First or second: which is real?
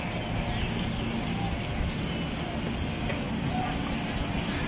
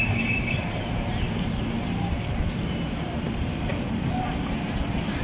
first